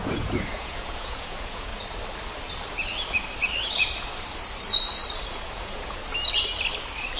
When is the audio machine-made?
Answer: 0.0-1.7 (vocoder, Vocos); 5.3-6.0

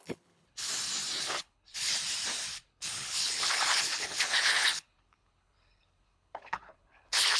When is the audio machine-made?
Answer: 0.0-0.7 (codec, HILCodec); 1.2-1.9; 2.5-7.4

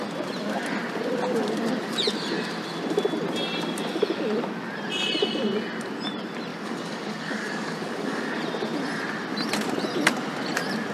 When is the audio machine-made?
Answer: 6.5-8.4 (codec, DAC)

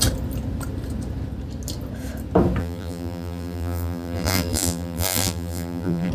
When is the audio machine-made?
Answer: 2.6-6.1 (vocoder, BigVGAN v2)